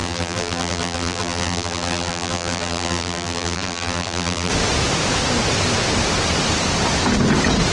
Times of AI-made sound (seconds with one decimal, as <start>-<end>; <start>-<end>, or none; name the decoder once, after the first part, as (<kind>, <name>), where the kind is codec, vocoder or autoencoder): 0.0-4.5 (vocoder, BigVGAN v2)